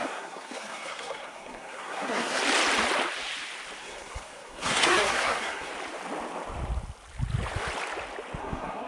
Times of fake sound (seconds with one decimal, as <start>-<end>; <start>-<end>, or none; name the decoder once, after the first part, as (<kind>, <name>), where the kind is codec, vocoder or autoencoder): 0.0-2.4 (codec, SNAC); 3.8-5.7; 8.4-8.9